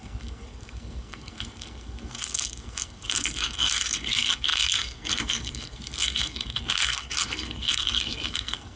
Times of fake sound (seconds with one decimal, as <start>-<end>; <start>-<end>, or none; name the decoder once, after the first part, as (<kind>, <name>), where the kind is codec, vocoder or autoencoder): 0.0-8.8 (codec, SNAC)